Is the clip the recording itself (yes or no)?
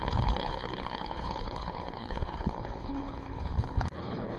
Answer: no